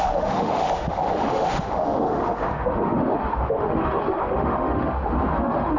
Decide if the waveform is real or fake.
fake